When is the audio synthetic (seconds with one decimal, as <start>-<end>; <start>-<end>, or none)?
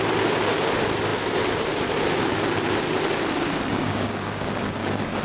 3.8-5.2